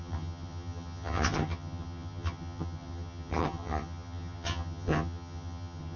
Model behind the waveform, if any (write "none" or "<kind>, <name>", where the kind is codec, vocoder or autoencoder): vocoder, HiFi-GAN